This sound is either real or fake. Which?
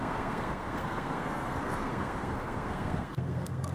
fake